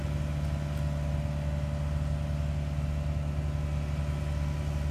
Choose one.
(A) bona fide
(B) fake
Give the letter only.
A